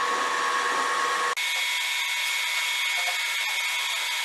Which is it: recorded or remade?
recorded